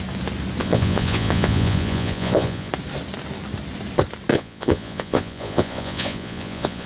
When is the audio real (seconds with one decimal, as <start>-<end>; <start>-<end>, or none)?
0.0-0.6; 2.7-4.3